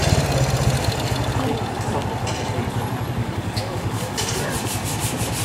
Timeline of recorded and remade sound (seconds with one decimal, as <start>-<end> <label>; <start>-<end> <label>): 0.0-3.2 recorded; 3.2-4.4 remade; 4.4-5.4 recorded